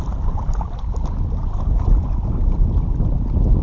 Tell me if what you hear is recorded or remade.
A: recorded